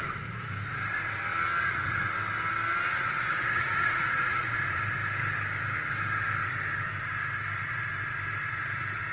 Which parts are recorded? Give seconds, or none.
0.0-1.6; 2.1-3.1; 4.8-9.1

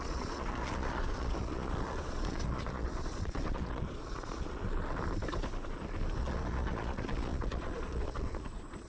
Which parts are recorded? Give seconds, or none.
4.6-6.2

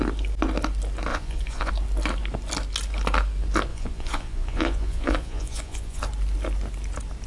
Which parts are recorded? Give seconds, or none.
0.0-1.1; 1.7-3.7; 6.0-7.3

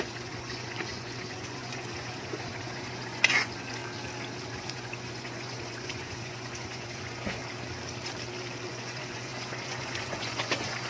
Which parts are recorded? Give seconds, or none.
3.8-4.5; 7.4-8.7